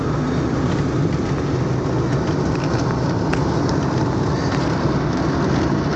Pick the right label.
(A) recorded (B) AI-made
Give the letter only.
A